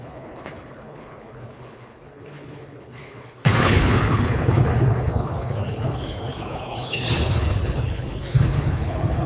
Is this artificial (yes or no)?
yes